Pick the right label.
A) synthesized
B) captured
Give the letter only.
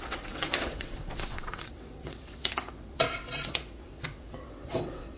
A